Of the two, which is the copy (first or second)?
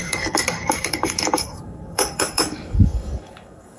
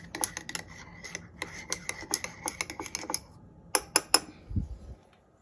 first